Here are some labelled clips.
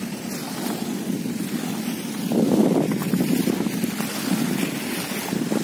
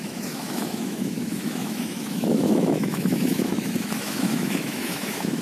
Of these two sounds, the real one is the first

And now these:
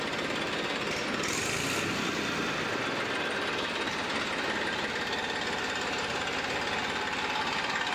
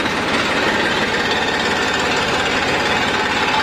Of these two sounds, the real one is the second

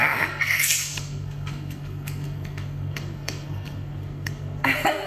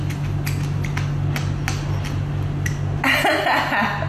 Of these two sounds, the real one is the second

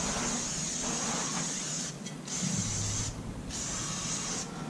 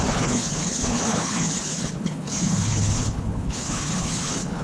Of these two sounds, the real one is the first